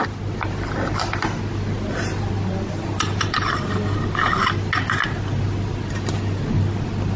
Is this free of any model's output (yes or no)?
yes